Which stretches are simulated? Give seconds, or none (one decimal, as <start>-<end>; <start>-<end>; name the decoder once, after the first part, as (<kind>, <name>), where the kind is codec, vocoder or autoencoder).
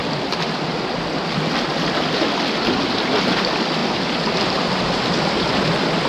none